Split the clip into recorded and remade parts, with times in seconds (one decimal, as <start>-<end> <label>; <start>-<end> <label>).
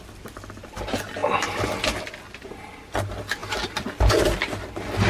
0.0-3.4 remade; 3.4-4.5 recorded; 4.5-5.1 remade